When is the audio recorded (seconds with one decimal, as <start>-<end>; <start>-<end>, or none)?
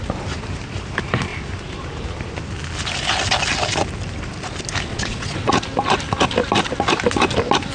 0.0-4.9; 5.5-7.7